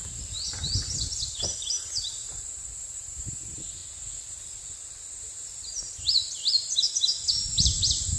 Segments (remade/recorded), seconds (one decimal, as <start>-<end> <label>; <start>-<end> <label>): 0.0-1.1 recorded; 1.1-3.8 remade; 3.8-7.3 recorded; 7.3-8.2 remade